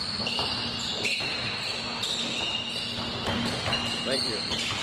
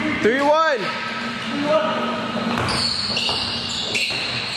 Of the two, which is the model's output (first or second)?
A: first